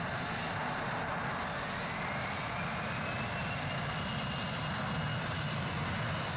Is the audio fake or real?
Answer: real